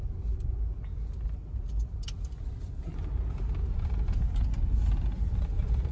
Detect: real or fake real